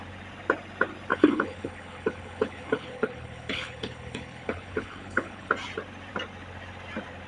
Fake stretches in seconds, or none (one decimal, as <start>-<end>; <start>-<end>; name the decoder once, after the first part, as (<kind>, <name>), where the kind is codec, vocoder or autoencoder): 1.1-5.5 (codec, HILCodec)